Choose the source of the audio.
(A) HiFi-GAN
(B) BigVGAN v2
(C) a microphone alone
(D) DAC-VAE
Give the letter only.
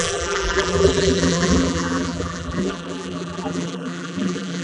B